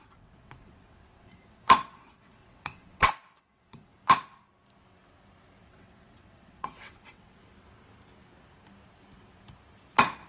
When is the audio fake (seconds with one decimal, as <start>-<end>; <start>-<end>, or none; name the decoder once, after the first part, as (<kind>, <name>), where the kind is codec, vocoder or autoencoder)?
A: 0.0-3.9 (vocoder, WaveNeXt); 5.6-7.4